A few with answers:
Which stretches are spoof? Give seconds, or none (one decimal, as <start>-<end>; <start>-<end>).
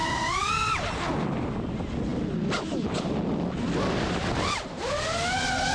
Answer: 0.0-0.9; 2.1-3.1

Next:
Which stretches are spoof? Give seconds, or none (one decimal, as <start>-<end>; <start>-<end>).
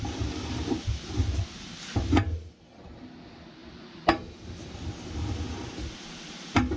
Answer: none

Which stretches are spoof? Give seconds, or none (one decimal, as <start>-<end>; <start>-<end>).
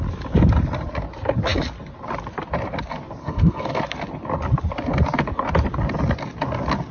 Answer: 3.2-3.8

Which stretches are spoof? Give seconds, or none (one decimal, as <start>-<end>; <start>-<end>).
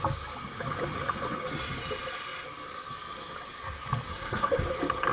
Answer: 4.1-4.6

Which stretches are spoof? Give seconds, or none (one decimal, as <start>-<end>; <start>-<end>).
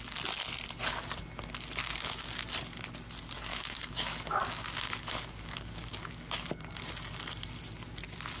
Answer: 1.8-2.4; 3.5-6.5